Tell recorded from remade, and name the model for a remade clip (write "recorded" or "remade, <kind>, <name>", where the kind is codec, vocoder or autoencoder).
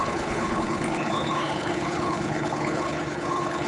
remade, codec, HILCodec